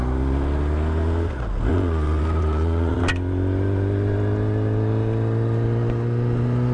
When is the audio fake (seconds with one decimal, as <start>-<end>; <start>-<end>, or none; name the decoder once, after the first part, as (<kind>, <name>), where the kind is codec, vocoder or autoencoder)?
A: 1.7-3.0 (vocoder, Vocos)